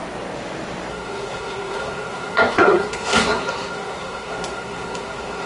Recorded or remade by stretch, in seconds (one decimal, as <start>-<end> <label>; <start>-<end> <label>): 0.0-0.9 recorded; 0.9-5.5 remade